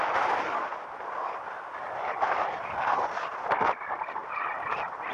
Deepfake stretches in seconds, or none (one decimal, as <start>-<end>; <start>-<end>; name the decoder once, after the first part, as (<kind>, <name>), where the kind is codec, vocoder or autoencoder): 0.7-3.6 (vocoder, BigVGAN v2)